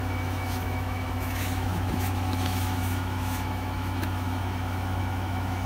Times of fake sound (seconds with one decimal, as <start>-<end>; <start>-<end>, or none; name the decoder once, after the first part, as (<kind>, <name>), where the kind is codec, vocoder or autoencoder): 0.0-5.7 (autoencoder, DAC-VAE)